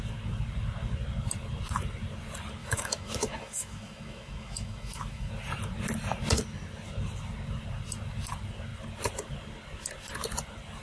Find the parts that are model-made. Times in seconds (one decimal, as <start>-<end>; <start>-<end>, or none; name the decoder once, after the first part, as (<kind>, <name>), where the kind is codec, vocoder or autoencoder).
2.6-5.3 (autoencoder, DAC-VAE)